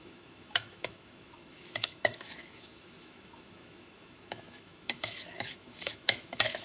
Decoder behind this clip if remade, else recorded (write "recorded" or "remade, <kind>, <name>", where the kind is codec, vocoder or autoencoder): remade, autoencoder, DAC-VAE